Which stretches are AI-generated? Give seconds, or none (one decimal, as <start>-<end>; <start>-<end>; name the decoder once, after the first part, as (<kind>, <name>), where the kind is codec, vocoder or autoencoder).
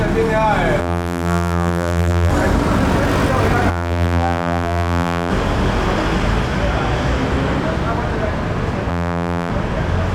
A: 0.8-2.3 (vocoder, BigVGAN v2); 3.7-5.3; 8.9-9.5